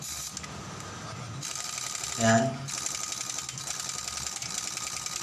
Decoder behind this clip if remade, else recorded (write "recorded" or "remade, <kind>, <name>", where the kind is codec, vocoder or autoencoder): recorded